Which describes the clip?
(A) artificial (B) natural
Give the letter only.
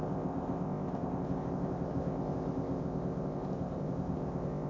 A